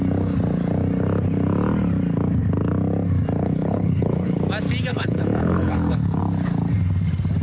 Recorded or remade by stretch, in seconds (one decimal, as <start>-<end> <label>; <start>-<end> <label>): 0.0-3.4 recorded; 3.4-4.4 remade; 4.4-4.9 recorded; 4.9-6.2 remade; 6.2-7.4 recorded